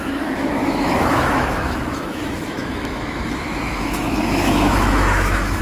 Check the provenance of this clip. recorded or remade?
remade